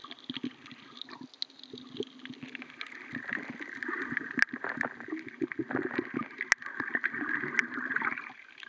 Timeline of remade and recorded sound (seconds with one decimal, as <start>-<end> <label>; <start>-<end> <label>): 0.0-8.7 recorded